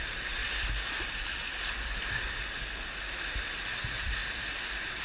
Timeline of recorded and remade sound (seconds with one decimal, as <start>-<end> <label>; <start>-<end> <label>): 0.0-5.0 recorded